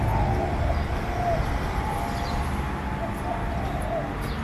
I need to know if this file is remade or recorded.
recorded